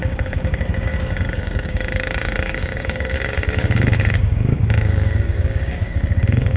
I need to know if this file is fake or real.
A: fake